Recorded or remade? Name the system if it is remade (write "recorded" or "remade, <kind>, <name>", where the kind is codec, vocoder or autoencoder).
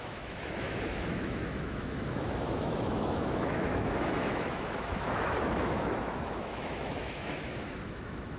remade, autoencoder, DAC-VAE